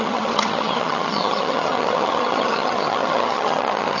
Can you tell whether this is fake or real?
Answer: fake